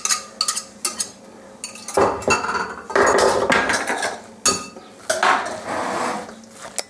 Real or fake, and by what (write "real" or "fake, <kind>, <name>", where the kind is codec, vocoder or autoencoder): real